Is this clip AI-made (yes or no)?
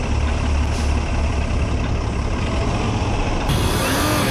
no